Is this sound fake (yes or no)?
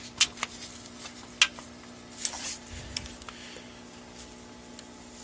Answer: no